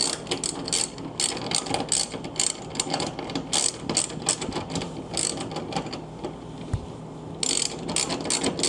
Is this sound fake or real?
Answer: real